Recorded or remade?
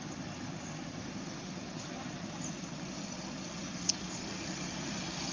recorded